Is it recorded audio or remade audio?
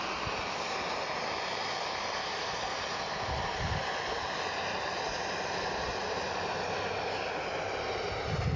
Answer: recorded